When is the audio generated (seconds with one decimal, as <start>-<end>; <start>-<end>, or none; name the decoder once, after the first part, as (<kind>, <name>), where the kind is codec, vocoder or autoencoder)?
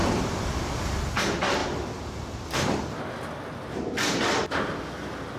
0.0-0.8 (vocoder, BigVGAN v2); 1.6-4.8